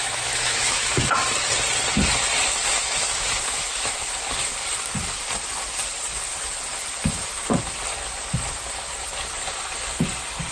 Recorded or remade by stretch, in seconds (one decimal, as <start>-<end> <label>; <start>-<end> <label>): 0.0-1.0 remade; 1.0-2.6 recorded; 2.6-4.3 remade; 4.3-10.5 recorded